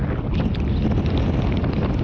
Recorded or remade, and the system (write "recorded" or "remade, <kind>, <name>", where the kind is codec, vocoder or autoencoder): recorded